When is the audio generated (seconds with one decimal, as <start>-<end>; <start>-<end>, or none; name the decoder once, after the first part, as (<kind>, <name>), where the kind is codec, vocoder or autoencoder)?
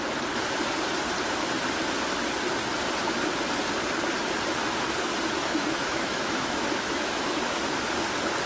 5.4-7.6 (autoencoder, DAC-VAE)